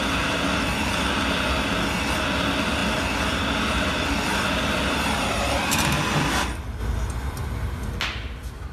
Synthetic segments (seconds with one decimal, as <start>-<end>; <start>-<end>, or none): 4.3-4.8